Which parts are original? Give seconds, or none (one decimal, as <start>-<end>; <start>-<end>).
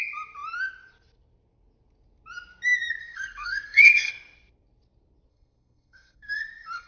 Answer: 0.0-3.0; 4.1-5.3